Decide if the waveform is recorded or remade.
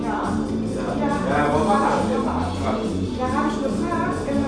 recorded